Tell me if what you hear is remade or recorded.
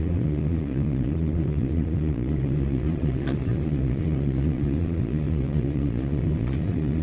remade